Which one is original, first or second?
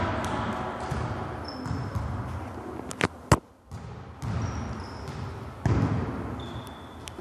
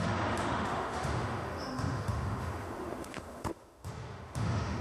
first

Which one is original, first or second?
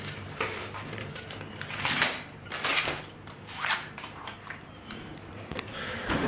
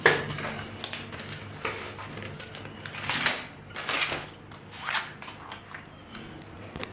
second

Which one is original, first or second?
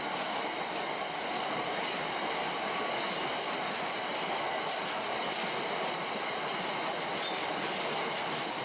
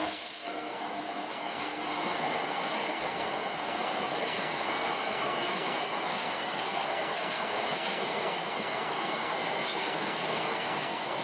first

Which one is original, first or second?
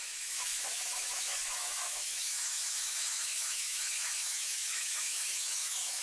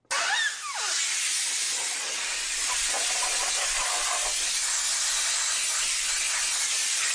second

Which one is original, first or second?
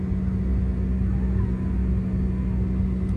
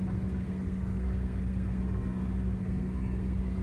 first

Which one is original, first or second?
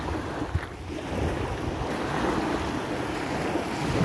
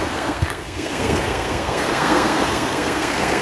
first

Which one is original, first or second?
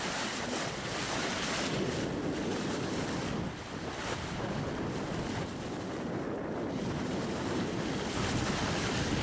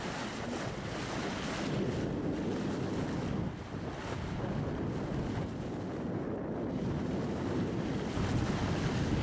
second